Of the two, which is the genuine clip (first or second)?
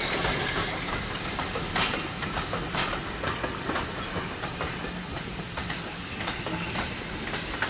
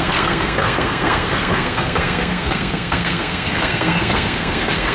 first